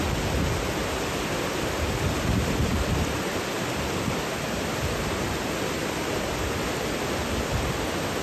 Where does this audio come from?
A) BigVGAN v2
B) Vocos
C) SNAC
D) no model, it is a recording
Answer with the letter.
D